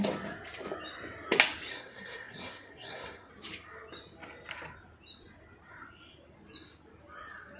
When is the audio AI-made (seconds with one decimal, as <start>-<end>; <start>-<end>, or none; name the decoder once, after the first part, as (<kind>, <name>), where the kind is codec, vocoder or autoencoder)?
1.7-3.3 (codec, SNAC)